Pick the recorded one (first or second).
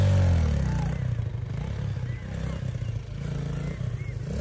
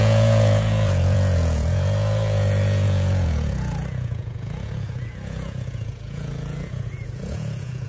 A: first